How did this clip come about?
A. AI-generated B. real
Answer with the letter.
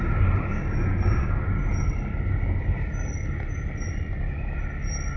B